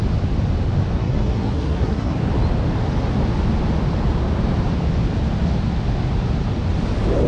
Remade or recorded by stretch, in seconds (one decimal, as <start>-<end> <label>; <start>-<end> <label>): 0.0-1.0 recorded; 1.0-2.2 remade; 2.2-7.3 recorded